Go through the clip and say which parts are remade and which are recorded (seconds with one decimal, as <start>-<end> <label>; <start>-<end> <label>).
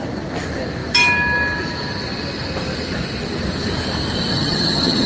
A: 0.0-4.3 recorded; 4.3-5.1 remade